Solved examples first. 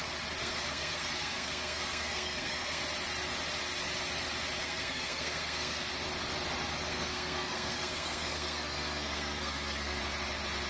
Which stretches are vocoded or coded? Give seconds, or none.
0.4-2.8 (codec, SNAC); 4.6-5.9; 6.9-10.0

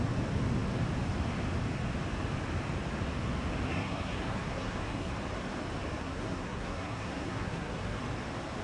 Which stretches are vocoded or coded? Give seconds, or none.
3.7-5.1 (codec, SNAC); 6.0-8.0

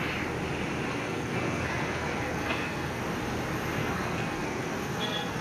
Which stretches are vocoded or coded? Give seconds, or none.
0.9-3.0 (codec, SNAC); 3.8-5.4

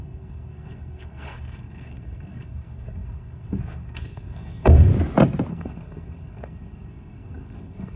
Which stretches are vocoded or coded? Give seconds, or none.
0.0-4.9 (codec, SNAC); 5.5-8.0

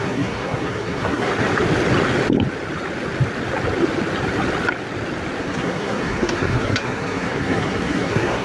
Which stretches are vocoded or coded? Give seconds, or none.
0.0-1.3 (codec, SNAC); 5.4-8.4